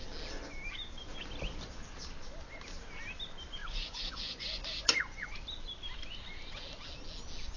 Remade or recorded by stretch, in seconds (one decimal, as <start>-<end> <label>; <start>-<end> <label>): 0.0-3.6 recorded; 3.6-5.3 remade; 5.3-7.6 recorded